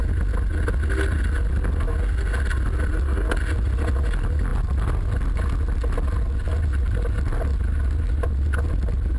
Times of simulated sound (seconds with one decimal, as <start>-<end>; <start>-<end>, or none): none